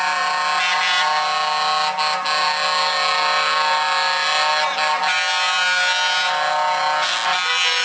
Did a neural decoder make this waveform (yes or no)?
no